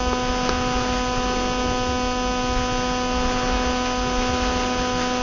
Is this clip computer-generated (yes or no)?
no